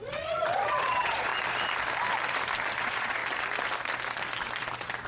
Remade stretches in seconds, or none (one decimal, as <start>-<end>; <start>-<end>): 0.0-1.3; 2.8-3.2